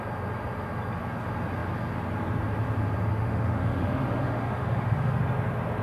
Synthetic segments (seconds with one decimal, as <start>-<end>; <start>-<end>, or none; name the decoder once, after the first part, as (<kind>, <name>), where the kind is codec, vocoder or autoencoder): 3.1-5.2 (autoencoder, DAC-VAE)